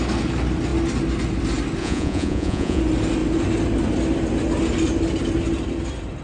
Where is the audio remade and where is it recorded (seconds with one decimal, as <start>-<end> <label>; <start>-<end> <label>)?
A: 0.0-1.8 recorded; 1.8-2.8 remade; 2.8-6.2 recorded